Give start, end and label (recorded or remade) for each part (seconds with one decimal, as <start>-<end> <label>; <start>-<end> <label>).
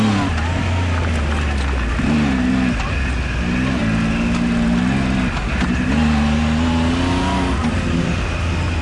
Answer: 0.0-8.8 recorded